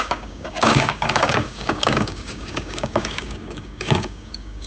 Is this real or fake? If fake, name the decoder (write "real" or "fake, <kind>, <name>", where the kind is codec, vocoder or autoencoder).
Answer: fake, codec, DAC